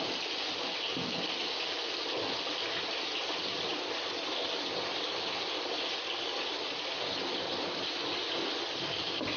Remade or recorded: recorded